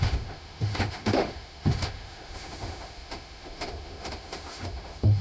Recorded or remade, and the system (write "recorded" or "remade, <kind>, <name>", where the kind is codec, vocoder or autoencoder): remade, autoencoder, DAC-VAE